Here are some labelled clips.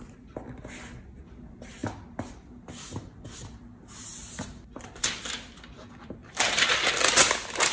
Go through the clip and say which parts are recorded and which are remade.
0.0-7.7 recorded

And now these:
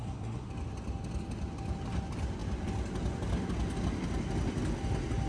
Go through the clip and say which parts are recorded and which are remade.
0.0-0.5 remade; 0.5-5.3 recorded

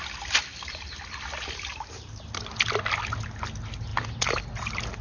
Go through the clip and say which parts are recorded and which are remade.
0.0-0.5 recorded; 0.5-1.9 remade; 1.9-5.0 recorded

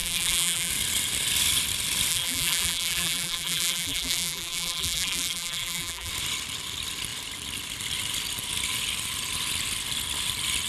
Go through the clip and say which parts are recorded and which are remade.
0.0-0.7 remade; 0.7-2.1 recorded; 2.1-6.1 remade; 6.1-10.7 recorded

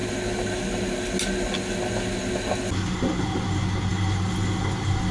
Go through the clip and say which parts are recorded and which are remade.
0.0-5.1 recorded

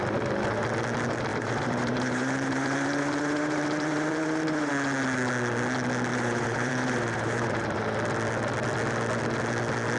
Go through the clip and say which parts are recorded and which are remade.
0.0-1.3 recorded; 1.3-4.7 remade; 4.7-6.1 recorded; 6.1-7.8 remade; 7.8-10.0 recorded